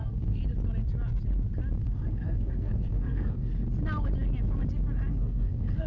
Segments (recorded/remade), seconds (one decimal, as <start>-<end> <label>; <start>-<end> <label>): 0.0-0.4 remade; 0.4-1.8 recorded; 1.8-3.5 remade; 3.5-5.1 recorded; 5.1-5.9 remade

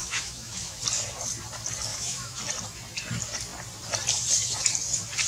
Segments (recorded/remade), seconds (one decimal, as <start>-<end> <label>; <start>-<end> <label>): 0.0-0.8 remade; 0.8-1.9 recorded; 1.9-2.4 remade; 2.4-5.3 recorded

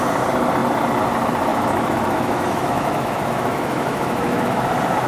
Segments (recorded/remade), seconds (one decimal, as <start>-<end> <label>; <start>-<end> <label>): 0.0-1.5 recorded; 1.5-4.6 remade; 4.6-5.1 recorded

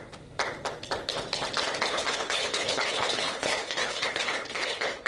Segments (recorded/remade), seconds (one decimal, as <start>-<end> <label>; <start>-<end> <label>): 0.0-1.9 recorded; 1.9-5.1 remade